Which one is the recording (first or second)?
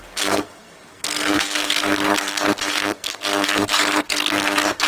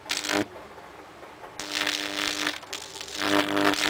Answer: second